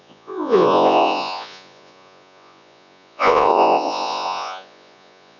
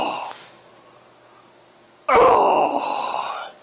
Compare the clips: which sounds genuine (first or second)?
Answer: second